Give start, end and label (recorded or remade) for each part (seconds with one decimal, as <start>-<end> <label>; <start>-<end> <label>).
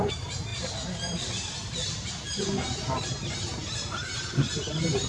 0.0-5.1 remade